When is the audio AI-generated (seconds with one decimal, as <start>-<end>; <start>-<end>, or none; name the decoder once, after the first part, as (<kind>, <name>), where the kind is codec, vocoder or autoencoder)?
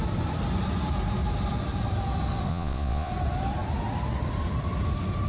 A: 2.5-3.1 (vocoder, Vocos)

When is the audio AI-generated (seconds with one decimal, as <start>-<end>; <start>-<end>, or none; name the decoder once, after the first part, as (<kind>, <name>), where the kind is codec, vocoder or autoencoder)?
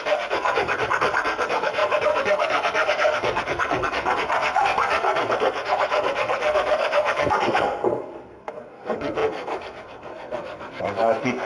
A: 0.0-11.5 (codec, SNAC)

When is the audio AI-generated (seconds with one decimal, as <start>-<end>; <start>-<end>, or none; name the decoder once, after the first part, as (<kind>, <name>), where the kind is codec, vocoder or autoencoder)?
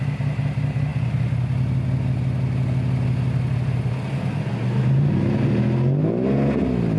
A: none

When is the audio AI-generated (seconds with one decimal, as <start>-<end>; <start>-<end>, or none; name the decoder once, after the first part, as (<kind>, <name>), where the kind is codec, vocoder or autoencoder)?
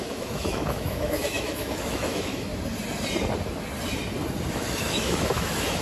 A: 0.0-2.5 (autoencoder, DAC-VAE); 4.5-5.8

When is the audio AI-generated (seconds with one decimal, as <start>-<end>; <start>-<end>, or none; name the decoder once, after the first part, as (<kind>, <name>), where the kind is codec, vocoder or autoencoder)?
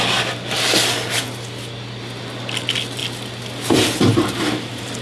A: none